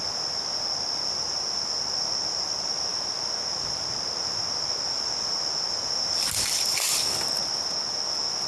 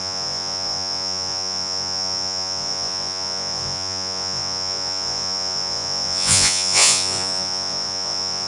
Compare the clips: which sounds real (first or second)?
first